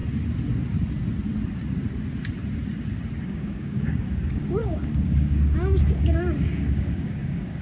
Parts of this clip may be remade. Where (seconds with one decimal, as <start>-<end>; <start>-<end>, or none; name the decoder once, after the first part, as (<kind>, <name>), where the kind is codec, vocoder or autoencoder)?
3.2-7.6 (codec, DAC)